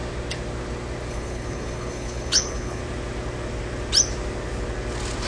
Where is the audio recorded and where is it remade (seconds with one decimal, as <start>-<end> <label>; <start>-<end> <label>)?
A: 0.0-1.1 recorded; 1.1-2.8 remade; 2.8-5.3 recorded